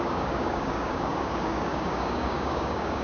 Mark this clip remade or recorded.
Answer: remade